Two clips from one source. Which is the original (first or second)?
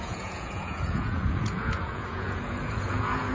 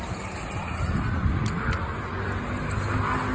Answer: second